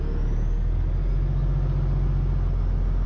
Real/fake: real